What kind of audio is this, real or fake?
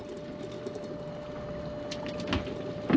real